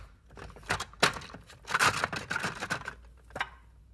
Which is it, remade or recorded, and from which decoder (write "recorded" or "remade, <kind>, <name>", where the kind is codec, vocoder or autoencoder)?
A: recorded